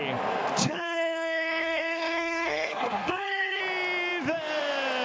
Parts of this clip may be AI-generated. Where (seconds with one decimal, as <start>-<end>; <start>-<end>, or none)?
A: 0.6-3.6